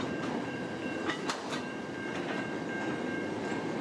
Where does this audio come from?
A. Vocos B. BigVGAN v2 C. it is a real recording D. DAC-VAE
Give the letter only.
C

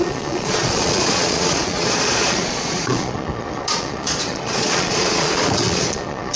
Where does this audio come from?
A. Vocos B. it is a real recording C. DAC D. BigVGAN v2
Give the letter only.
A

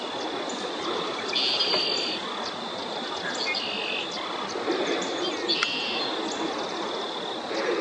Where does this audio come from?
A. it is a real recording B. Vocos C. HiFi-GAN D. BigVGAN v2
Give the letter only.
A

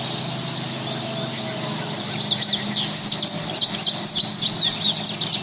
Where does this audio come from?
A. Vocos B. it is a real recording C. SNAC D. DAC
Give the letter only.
B